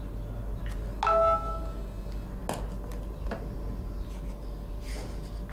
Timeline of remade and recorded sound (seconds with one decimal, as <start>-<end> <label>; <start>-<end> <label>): 0.0-5.5 recorded